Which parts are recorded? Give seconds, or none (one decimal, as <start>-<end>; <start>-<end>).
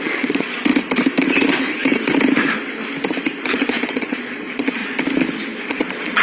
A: 0.7-3.4; 4.8-5.6